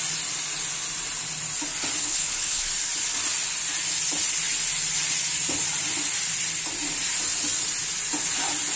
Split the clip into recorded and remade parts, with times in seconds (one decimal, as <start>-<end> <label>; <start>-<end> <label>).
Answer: 0.0-2.0 recorded; 2.0-2.7 remade; 2.7-8.8 recorded